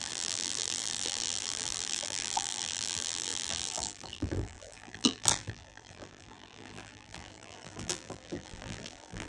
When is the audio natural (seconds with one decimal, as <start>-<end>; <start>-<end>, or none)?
none